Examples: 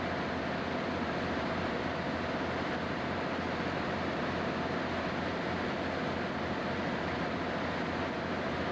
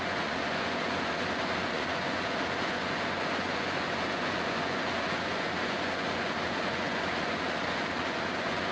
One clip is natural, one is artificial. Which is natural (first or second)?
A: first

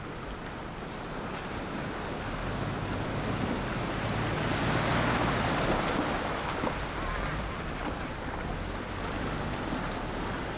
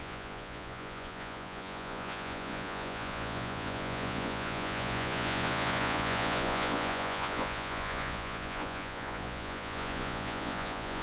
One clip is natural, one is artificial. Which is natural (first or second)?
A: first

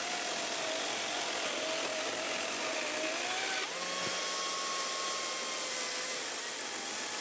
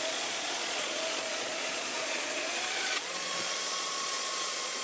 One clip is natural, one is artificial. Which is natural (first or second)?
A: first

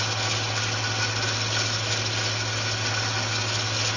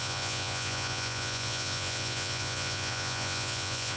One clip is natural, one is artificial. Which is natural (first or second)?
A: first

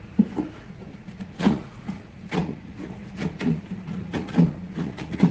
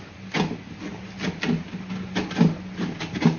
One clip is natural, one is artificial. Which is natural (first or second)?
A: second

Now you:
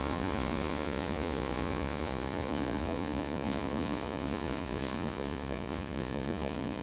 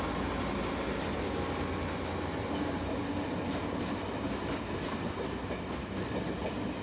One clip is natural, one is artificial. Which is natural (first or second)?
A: second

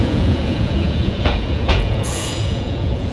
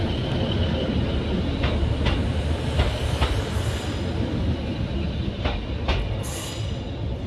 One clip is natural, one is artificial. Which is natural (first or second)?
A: second